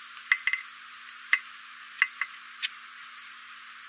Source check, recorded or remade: recorded